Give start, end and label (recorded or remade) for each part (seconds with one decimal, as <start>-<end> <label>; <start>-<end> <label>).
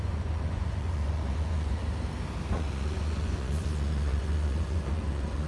0.0-1.8 remade; 1.8-2.5 recorded; 2.5-5.5 remade